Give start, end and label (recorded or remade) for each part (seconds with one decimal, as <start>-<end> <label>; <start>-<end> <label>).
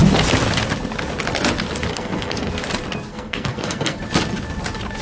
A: 0.0-1.9 recorded; 1.9-2.5 remade; 2.5-3.1 recorded; 3.1-4.0 remade; 4.0-5.0 recorded